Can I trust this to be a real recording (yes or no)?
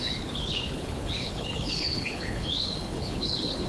no